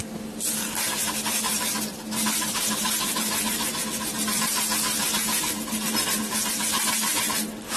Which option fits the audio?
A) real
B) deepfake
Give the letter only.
A